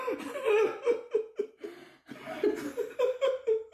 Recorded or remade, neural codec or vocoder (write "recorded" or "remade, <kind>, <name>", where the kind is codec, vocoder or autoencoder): recorded